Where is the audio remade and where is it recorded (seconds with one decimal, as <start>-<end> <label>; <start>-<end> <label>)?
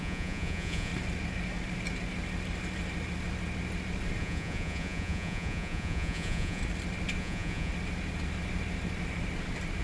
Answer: 0.0-0.9 remade; 0.9-4.2 recorded; 4.2-6.6 remade; 6.6-7.2 recorded; 7.2-7.7 remade; 7.7-9.8 recorded